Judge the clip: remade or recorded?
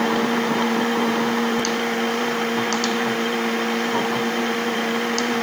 remade